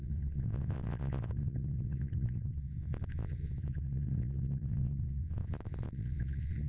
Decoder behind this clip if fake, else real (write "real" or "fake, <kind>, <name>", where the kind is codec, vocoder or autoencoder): fake, vocoder, WaveNeXt